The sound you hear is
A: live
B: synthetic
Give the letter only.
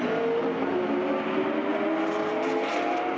A